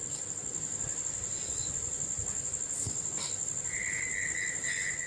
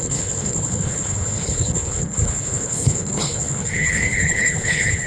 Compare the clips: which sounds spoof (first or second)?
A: second